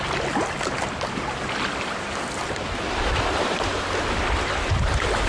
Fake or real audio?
real